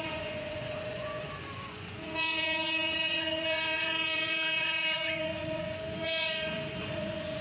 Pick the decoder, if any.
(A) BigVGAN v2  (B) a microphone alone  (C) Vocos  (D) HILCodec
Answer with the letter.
C